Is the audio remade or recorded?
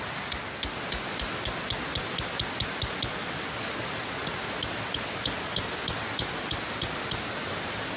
recorded